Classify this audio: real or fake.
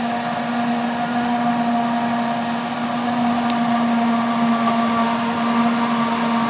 real